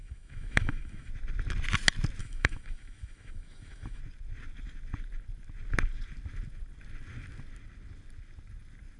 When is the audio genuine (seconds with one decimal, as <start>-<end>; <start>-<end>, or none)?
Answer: 1.1-2.2; 4.0-9.0